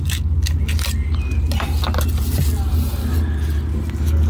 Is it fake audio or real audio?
real